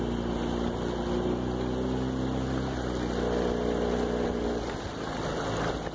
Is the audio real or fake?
real